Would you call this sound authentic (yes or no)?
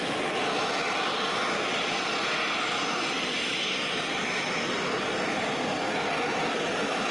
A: yes